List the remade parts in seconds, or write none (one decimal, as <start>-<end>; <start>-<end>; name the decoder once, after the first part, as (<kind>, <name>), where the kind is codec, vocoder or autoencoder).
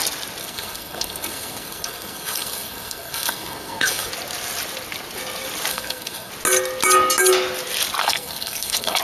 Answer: 0.4-4.1 (codec, SNAC); 5.7-6.3; 8.0-9.0